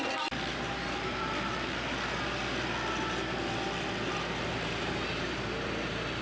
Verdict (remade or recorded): recorded